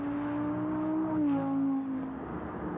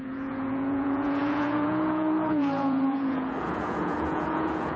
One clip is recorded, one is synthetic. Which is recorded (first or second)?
first